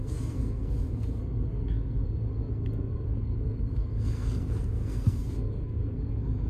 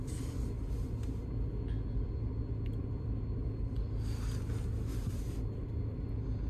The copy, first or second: first